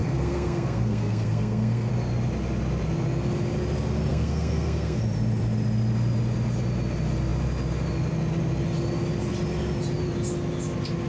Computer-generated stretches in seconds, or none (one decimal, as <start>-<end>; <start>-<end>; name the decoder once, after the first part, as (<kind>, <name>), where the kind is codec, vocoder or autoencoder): 0.0-1.9 (codec, SNAC); 4.1-5.0

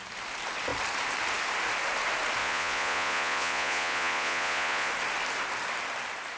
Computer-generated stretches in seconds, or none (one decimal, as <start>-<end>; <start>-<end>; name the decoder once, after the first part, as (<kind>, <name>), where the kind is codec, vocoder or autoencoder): 2.4-4.9 (vocoder, Vocos)

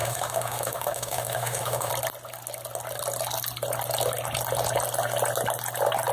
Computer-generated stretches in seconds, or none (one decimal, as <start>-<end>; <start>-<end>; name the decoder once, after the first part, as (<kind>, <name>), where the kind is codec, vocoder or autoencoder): 0.0-1.9 (autoencoder, DAC-VAE)

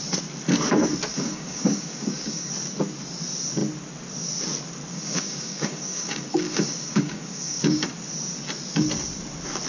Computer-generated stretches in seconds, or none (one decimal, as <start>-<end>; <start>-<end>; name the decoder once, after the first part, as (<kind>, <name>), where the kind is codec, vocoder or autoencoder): 1.1-2.5 (codec, DAC); 4.9-7.9

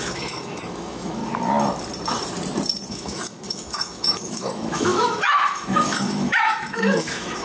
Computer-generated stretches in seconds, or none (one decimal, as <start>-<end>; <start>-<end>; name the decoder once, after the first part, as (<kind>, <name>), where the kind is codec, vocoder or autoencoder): 0.0-1.2 (autoencoder, DAC-VAE); 2.9-7.4

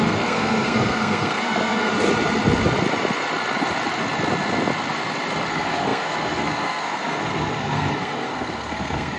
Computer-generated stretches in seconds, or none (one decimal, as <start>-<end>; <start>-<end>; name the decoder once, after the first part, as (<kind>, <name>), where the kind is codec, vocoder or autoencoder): 0.0-1.9 (codec, SNAC); 5.5-9.2

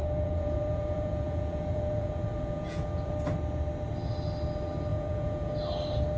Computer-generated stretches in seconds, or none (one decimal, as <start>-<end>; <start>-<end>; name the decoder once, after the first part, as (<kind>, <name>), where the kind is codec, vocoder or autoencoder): 0.0-3.1 (vocoder, Vocos); 4.9-5.5